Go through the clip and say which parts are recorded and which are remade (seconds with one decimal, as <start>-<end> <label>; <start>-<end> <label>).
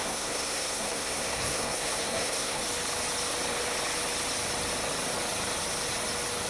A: 0.0-2.6 remade; 2.6-6.5 recorded